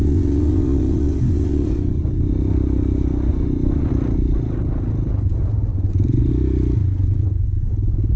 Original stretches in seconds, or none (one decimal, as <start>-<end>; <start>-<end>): 2.3-3.3; 3.9-5.7; 6.3-6.8; 7.7-8.2